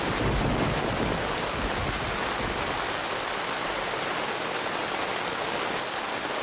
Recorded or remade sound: recorded